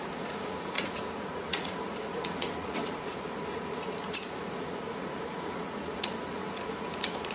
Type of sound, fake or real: fake